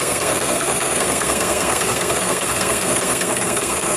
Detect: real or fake fake